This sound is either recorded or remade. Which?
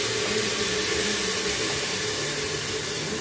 recorded